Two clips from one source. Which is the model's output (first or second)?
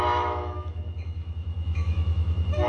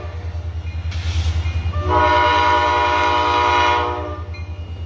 first